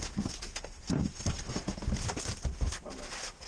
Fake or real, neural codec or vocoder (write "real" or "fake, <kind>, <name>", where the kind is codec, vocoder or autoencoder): real